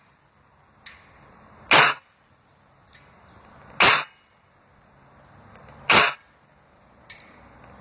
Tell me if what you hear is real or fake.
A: real